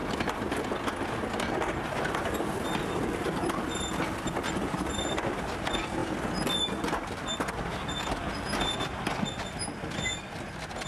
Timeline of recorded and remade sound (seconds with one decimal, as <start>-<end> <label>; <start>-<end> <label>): 0.0-10.9 recorded